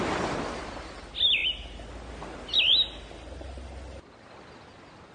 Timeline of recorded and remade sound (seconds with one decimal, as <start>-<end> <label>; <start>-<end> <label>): 0.0-5.1 recorded